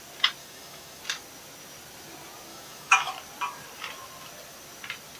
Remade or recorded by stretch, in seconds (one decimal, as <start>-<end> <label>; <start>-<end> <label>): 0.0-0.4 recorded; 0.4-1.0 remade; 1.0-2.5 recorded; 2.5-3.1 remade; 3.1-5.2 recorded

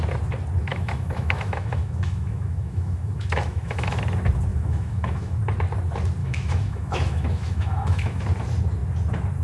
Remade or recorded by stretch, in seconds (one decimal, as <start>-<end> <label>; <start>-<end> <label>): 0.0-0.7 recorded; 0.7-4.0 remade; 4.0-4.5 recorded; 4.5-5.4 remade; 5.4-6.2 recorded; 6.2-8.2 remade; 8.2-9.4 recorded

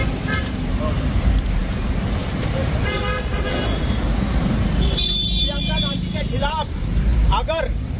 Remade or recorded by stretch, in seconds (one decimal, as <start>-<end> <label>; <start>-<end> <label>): 0.0-8.0 remade

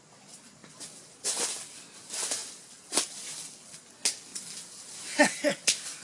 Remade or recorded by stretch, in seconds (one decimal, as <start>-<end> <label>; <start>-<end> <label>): 0.0-6.0 recorded

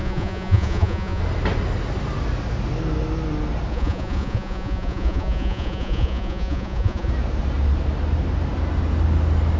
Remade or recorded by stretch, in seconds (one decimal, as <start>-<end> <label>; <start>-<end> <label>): 0.0-1.2 remade; 1.2-3.7 recorded; 3.7-7.1 remade; 7.1-9.6 recorded

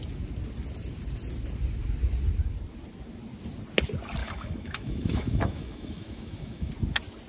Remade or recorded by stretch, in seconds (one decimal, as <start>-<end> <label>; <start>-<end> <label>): 0.0-4.2 recorded; 4.2-6.7 remade; 6.7-7.3 recorded

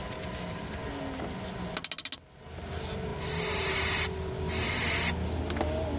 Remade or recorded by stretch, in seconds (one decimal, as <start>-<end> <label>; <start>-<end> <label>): 0.0-6.0 recorded